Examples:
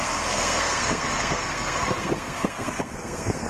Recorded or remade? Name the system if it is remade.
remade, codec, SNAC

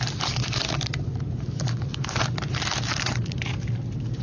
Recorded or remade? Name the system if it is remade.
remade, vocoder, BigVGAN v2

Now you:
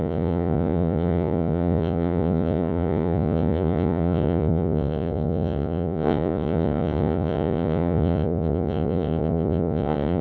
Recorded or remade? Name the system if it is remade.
remade, vocoder, Vocos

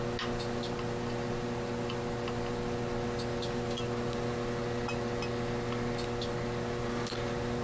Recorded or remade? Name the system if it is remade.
recorded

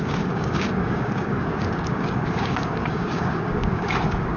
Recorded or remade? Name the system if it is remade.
remade, codec, DAC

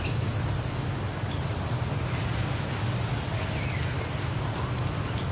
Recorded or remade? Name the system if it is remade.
recorded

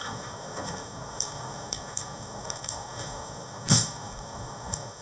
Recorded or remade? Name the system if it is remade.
remade, codec, DAC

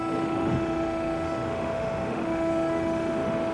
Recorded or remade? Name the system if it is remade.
remade, autoencoder, DAC-VAE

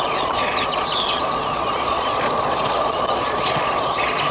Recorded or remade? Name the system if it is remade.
remade, vocoder, Vocos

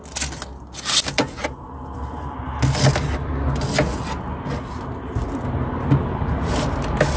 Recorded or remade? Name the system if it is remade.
recorded